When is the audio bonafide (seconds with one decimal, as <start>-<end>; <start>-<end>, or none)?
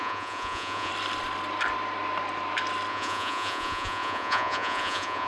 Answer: 0.9-2.9